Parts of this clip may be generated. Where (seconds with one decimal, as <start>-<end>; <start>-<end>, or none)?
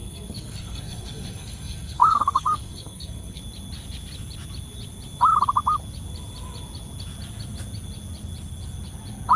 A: 0.0-3.4